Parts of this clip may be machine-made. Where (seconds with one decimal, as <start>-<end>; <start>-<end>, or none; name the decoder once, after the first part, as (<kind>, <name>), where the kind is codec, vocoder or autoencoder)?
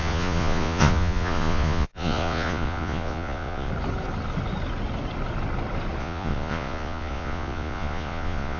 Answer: 0.0-3.7 (vocoder, Vocos); 6.0-8.6